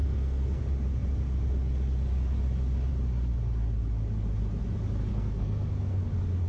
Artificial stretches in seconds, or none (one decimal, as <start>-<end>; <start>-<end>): 0.0-0.6; 5.1-6.1